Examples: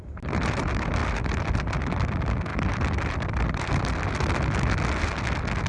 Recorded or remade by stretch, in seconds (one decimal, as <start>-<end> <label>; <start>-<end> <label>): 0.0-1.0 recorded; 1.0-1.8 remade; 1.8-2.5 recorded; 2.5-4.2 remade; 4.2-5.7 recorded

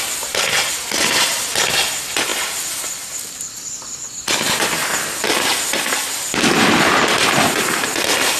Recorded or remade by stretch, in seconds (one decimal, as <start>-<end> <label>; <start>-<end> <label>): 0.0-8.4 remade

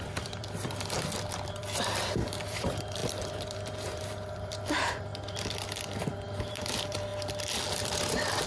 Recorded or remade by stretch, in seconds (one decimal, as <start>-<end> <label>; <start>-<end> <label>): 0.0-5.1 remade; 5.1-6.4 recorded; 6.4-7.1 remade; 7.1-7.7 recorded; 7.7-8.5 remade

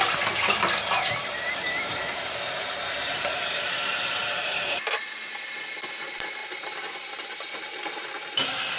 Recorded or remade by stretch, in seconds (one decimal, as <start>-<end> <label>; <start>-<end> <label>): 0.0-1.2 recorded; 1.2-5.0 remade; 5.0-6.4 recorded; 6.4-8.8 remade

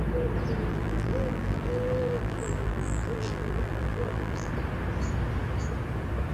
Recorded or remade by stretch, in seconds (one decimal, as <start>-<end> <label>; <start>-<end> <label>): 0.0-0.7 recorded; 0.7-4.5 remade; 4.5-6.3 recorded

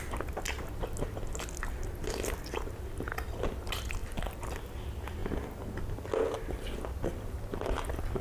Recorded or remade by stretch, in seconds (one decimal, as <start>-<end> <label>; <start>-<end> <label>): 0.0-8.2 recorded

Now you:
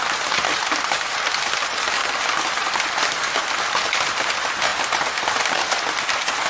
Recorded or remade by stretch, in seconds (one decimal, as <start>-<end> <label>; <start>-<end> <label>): 0.0-6.5 recorded